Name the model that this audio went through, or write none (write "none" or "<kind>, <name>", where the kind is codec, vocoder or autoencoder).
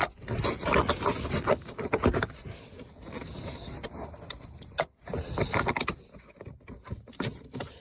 none